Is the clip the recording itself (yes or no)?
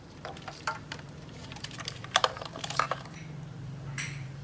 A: no